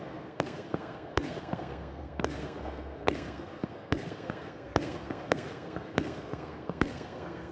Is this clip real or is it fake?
fake